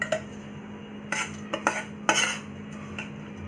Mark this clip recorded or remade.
recorded